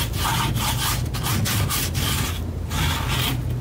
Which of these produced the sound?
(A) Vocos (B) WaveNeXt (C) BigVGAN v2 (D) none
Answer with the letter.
D